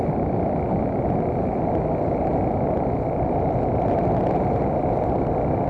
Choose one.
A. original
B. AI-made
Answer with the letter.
A